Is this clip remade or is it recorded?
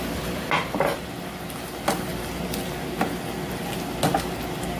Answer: recorded